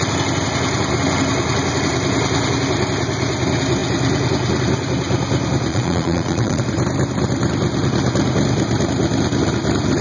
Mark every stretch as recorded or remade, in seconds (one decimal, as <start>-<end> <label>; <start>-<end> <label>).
0.0-5.7 recorded; 5.7-6.6 remade; 6.6-10.0 recorded